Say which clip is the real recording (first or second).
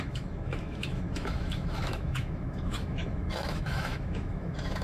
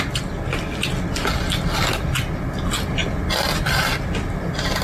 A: second